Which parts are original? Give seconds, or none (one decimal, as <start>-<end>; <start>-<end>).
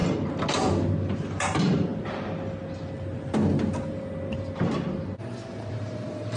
0.0-1.0; 1.9-5.7